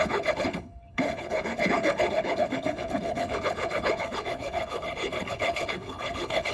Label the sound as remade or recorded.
remade